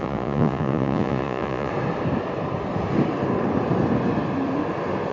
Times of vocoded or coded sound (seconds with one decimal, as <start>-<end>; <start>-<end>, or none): 0.0-1.7